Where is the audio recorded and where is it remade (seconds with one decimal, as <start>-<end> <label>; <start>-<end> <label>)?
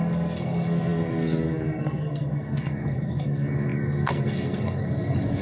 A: 0.0-5.4 remade